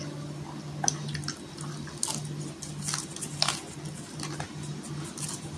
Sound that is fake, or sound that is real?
real